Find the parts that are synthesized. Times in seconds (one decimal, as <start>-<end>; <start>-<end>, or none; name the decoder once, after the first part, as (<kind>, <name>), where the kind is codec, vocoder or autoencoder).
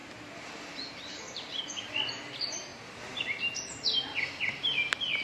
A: 0.0-1.6 (vocoder, BigVGAN v2); 2.7-3.4